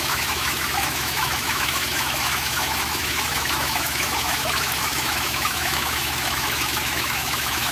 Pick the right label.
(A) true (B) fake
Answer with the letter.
B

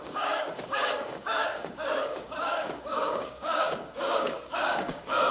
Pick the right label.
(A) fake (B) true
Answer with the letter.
A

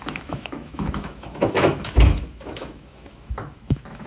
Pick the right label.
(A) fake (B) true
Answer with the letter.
A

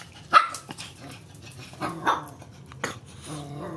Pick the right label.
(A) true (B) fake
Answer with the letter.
A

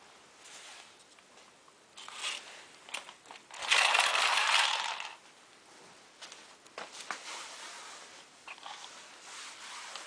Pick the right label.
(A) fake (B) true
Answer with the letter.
B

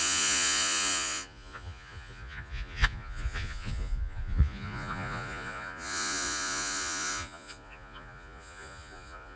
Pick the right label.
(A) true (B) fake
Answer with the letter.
B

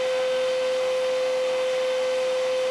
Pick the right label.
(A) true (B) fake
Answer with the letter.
B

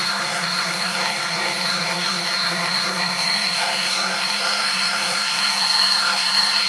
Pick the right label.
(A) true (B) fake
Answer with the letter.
B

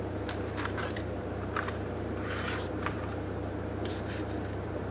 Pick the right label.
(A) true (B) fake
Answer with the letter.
B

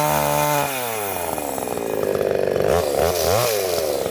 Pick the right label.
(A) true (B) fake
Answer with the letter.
A